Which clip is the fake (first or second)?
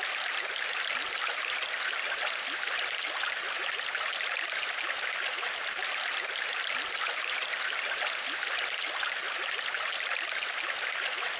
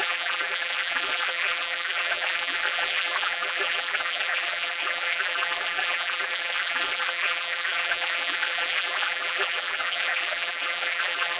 second